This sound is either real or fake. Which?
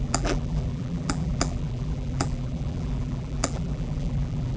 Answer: fake